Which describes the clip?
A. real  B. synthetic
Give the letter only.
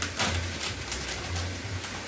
B